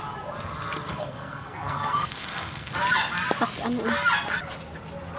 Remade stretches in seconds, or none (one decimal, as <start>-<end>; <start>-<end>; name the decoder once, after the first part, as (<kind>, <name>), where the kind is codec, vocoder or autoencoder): 0.9-2.7 (codec, SNAC)